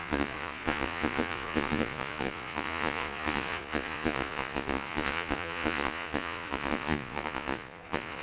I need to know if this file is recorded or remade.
remade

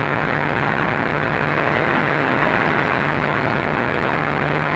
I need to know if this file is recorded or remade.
remade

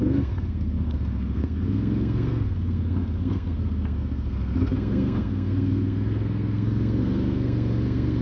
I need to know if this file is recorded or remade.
remade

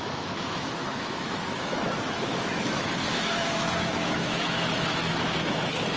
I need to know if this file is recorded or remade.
remade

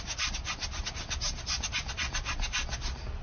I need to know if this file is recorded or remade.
recorded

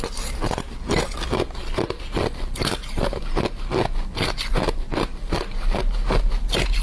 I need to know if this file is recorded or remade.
recorded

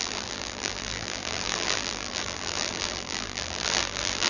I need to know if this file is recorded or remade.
remade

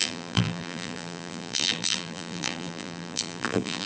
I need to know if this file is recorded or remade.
remade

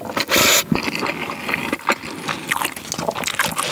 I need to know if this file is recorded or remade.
recorded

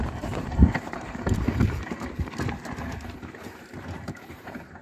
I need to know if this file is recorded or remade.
remade